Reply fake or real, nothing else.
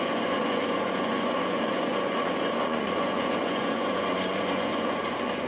fake